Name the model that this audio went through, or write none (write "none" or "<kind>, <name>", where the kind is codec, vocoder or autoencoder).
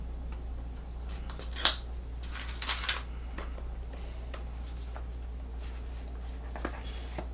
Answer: none